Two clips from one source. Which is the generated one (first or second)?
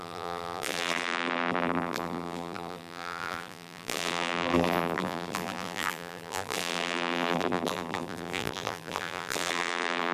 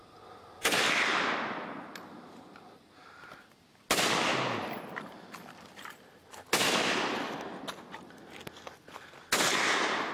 first